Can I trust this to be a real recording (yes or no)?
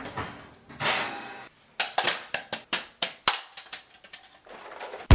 yes